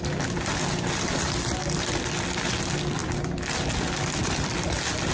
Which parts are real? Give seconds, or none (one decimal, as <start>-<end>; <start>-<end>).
0.0-5.1